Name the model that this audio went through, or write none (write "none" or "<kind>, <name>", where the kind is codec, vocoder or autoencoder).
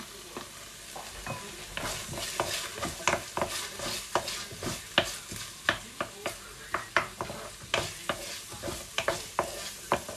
none